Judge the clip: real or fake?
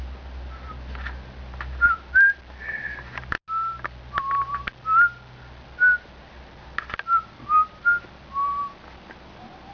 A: real